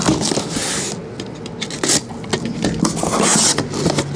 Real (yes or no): yes